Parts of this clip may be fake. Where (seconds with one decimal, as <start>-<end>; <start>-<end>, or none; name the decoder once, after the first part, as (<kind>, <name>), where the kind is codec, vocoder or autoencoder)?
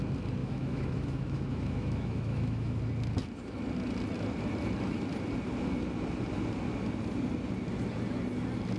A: 0.4-2.8 (autoencoder, DAC-VAE)